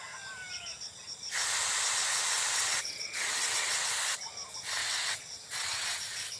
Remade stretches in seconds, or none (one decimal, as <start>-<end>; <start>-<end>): 2.1-3.9; 4.8-6.4

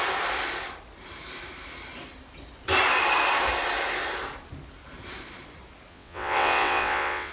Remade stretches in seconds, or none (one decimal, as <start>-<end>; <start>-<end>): 5.9-7.3

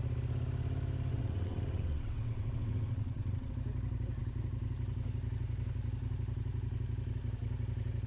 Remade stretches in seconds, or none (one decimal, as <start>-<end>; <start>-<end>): 1.1-3.5

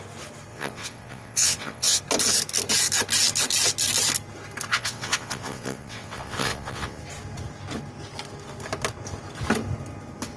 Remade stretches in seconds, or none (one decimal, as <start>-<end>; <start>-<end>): 0.5-2.0; 4.7-7.0

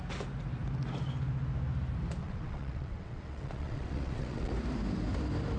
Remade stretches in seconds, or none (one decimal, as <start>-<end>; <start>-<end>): 2.2-4.5

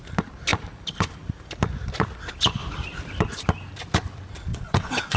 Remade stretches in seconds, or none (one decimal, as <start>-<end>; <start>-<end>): 4.5-5.2